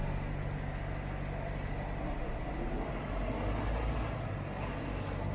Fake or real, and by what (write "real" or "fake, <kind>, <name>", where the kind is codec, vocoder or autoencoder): real